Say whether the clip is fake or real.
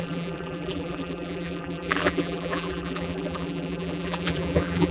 fake